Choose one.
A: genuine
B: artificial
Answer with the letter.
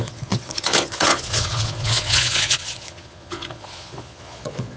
B